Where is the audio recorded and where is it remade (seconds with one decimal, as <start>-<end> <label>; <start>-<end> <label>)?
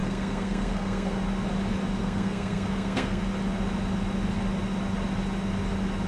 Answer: 0.0-1.2 remade; 1.2-2.0 recorded; 2.0-3.2 remade; 3.2-6.1 recorded